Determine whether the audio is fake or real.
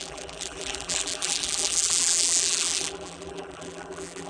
fake